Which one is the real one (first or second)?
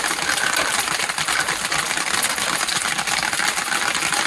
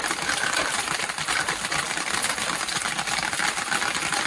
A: first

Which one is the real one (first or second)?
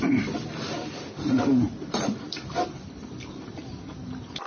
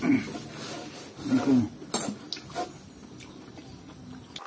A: second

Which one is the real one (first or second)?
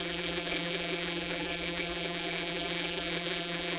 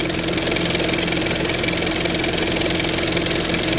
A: second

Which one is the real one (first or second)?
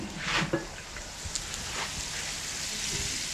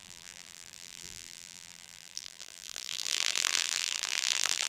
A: first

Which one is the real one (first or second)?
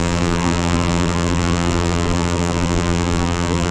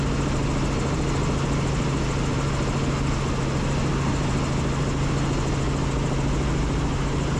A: second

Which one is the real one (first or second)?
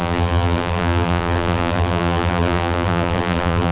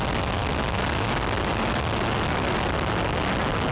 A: second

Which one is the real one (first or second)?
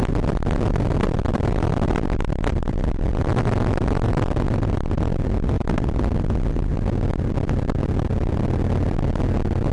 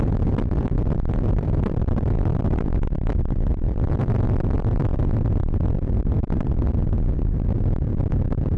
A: first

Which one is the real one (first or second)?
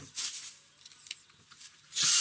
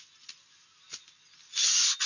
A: second